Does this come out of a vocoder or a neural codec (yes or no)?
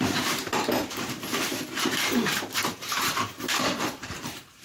yes